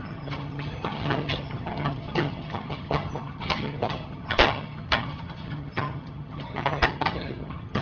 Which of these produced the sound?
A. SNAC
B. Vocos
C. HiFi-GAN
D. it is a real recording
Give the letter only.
C